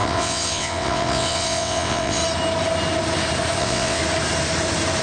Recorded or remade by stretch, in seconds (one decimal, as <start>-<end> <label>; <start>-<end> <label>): 0.0-2.2 remade; 2.2-3.6 recorded; 3.6-4.0 remade; 4.0-5.0 recorded